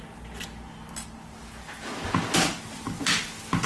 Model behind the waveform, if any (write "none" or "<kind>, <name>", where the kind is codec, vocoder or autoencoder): none